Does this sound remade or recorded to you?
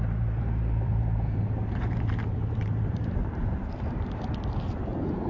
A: remade